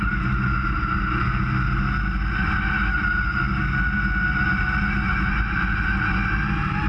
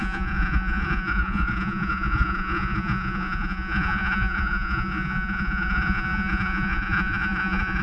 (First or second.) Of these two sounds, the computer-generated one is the second